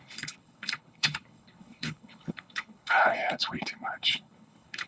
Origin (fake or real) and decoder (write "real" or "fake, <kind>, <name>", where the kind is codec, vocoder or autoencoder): fake, codec, HILCodec